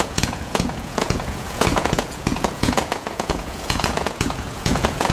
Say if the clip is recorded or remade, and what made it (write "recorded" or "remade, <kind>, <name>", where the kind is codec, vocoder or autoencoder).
remade, vocoder, Vocos